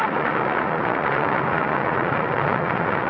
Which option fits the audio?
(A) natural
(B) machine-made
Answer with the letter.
B